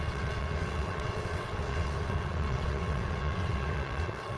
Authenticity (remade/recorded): remade